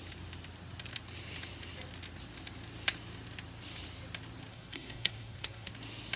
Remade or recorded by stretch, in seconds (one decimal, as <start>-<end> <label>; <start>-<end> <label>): 0.0-4.5 recorded; 4.5-5.7 remade; 5.7-6.2 recorded